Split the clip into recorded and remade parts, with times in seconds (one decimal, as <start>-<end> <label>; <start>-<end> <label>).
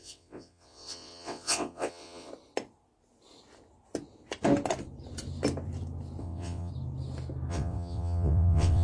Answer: 0.0-2.3 remade; 2.3-6.2 recorded; 6.2-6.7 remade; 6.7-7.5 recorded; 7.5-8.8 remade